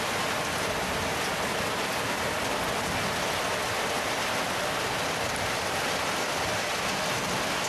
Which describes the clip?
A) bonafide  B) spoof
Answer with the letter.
A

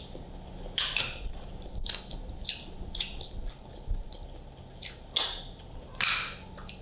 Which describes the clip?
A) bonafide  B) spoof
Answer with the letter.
A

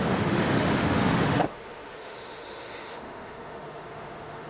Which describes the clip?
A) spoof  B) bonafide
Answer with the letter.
A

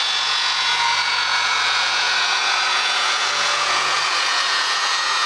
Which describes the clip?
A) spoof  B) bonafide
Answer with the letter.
A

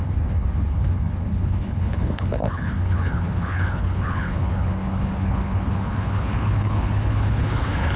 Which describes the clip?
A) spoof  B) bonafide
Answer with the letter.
A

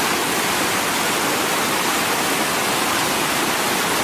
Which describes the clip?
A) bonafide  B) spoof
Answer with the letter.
A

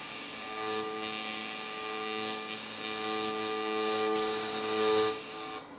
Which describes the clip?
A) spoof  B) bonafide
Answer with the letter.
A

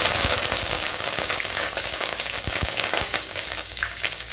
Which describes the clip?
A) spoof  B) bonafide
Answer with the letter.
A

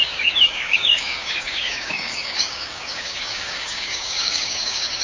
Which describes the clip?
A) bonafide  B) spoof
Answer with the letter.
B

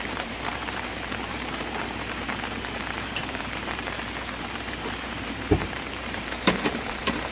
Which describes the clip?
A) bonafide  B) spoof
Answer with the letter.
B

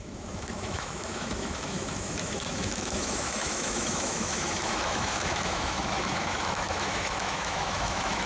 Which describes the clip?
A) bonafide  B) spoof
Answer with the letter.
B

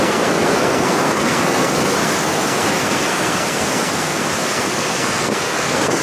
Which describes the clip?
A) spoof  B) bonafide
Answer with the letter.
A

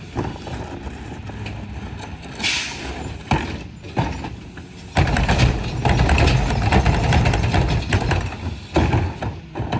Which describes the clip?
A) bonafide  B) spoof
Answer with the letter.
A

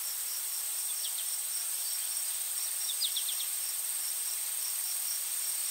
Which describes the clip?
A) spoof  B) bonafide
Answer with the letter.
A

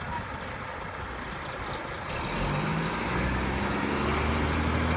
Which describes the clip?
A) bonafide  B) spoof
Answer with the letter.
A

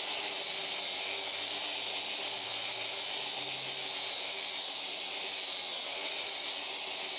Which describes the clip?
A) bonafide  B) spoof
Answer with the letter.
A